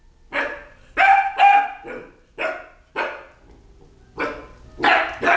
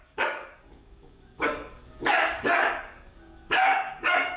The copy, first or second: second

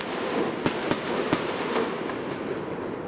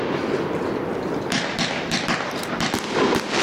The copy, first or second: second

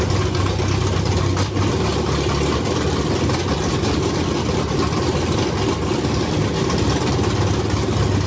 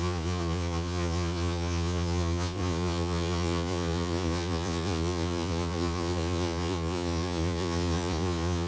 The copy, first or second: second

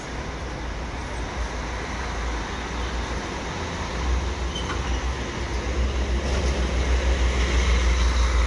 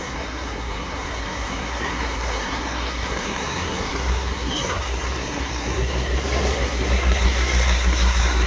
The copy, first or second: second